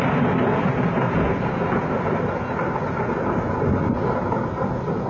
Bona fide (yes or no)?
yes